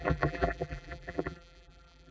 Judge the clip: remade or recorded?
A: remade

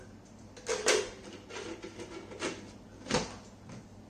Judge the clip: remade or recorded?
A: recorded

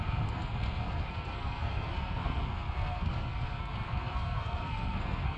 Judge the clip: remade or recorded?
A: remade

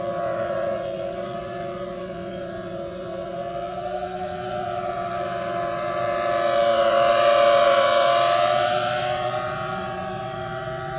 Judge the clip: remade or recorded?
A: remade